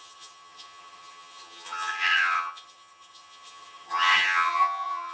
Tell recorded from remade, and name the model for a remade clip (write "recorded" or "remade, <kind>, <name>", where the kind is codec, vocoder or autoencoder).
remade, vocoder, HiFi-GAN